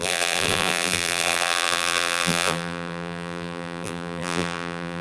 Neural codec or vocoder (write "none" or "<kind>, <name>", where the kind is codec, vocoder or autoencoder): vocoder, BigVGAN v2